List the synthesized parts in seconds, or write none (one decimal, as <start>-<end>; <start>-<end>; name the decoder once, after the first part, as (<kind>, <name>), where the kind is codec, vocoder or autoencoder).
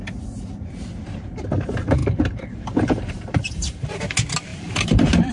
2.0-4.1 (vocoder, BigVGAN v2); 4.5-5.3